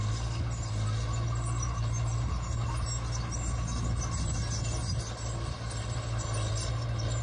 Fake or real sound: real